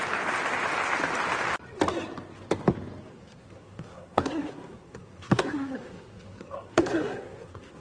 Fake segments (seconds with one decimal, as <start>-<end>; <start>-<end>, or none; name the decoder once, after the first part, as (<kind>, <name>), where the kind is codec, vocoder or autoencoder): 3.1-7.8 (codec, SNAC)